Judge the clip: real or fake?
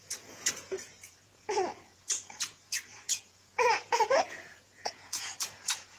fake